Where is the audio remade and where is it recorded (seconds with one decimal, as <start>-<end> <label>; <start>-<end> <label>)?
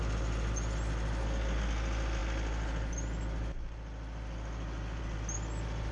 0.0-5.9 recorded